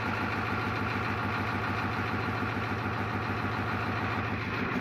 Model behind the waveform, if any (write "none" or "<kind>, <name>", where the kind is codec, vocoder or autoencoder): none